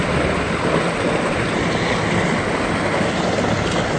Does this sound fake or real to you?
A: real